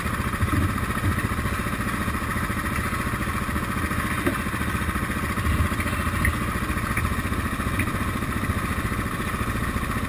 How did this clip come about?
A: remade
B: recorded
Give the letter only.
B